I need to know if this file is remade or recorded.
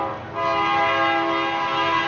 recorded